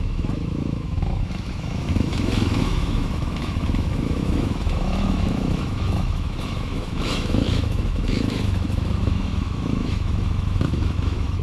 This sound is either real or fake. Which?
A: fake